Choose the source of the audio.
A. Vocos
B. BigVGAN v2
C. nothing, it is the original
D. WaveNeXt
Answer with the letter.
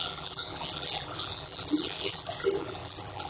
B